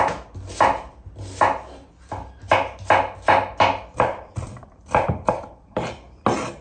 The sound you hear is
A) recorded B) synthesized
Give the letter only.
A